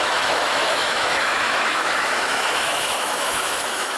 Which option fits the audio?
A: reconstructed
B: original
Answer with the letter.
A